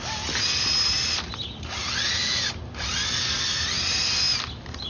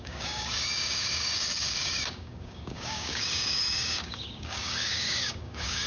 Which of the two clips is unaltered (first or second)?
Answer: first